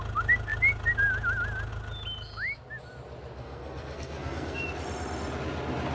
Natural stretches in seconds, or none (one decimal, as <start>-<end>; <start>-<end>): 0.0-3.4; 4.6-5.9

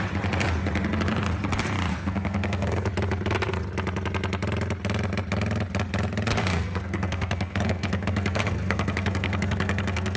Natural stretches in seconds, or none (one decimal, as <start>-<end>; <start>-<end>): 0.0-1.9; 2.9-6.4

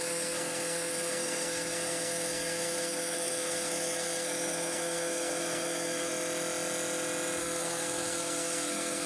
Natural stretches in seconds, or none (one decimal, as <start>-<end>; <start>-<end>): 6.1-7.4

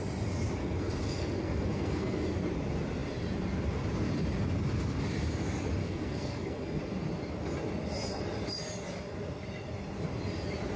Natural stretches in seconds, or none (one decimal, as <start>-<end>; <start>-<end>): 0.0-0.6; 2.2-5.8; 6.8-10.8

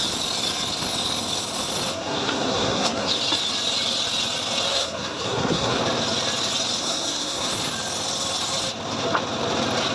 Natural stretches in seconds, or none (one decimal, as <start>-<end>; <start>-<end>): 0.0-1.9; 3.1-4.7; 5.8-6.8; 7.5-9.9